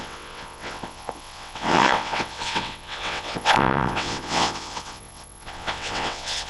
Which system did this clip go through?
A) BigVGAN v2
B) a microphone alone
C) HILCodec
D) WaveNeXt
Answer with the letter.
D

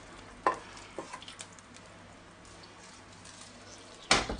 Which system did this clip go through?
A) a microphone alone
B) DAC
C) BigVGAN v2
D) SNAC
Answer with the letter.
A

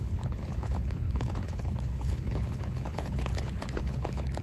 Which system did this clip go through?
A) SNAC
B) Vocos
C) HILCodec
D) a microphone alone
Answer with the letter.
C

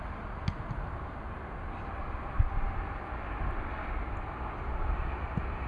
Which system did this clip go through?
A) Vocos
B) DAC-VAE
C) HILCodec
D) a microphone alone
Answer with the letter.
D